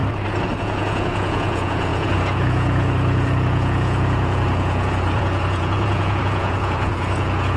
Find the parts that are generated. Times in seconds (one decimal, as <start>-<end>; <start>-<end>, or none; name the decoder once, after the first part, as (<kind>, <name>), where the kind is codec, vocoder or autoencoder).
0.6-7.6 (vocoder, Vocos)